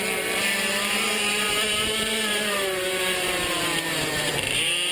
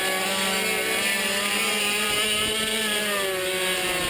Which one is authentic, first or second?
second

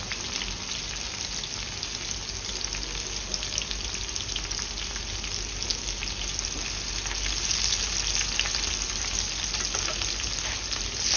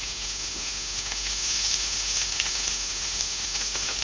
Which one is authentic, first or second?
first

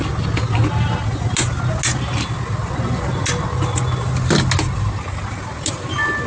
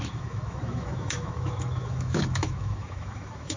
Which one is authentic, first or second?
first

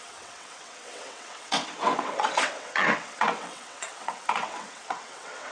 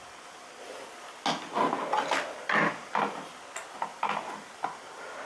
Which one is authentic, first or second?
second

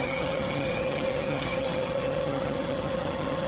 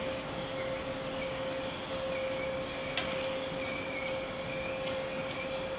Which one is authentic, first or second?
second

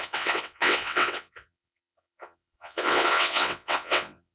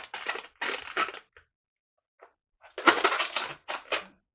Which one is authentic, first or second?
second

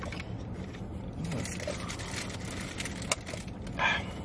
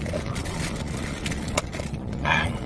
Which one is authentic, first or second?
first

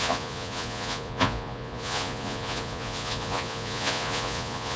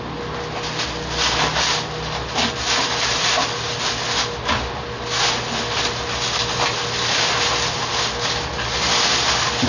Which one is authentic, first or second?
second